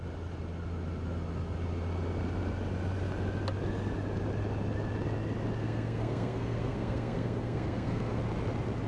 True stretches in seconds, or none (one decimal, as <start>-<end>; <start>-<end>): 0.0-5.6; 8.2-8.9